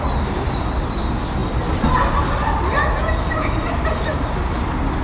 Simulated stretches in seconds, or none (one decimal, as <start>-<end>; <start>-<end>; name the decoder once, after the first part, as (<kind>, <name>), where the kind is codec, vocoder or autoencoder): none